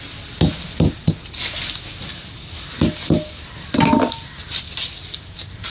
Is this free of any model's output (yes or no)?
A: yes